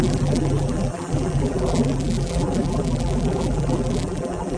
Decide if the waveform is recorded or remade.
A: remade